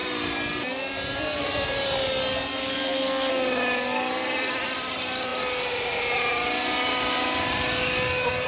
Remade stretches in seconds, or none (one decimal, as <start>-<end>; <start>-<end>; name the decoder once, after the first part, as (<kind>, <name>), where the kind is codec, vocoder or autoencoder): 2.6-3.3 (codec, SNAC)